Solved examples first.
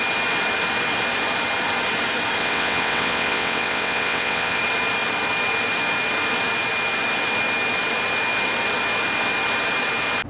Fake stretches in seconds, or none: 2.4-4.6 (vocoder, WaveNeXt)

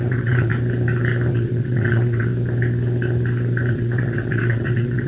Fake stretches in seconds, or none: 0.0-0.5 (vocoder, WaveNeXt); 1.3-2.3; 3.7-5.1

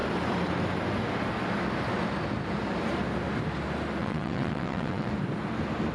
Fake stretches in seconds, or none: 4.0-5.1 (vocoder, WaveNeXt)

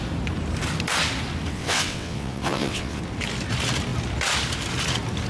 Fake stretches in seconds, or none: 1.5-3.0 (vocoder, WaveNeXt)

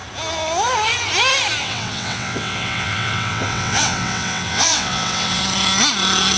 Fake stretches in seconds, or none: 1.6-5.4 (vocoder, WaveNeXt)